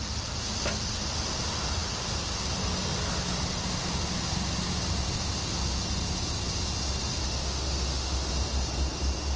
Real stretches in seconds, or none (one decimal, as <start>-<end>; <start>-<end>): 0.0-7.2; 8.3-9.4